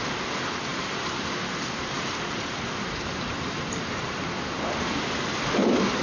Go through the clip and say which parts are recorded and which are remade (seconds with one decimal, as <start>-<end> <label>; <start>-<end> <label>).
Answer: 0.0-0.7 recorded; 0.7-4.3 remade; 4.3-6.0 recorded